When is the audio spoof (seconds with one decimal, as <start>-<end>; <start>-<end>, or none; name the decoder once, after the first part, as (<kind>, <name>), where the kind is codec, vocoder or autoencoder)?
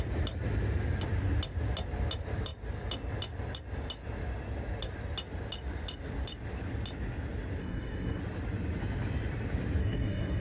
7.6-8.2 (codec, SNAC); 9.8-10.4